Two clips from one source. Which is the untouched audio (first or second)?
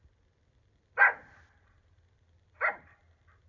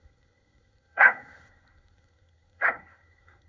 first